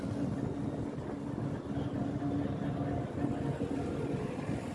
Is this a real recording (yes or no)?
yes